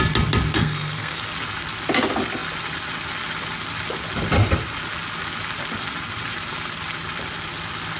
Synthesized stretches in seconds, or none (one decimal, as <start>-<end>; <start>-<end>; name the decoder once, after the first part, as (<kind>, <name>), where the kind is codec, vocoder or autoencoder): 0.5-1.2 (codec, SNAC)